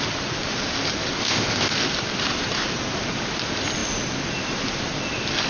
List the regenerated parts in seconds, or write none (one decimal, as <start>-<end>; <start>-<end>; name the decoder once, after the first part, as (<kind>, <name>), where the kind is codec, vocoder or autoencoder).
1.2-1.7 (codec, ZipCodec)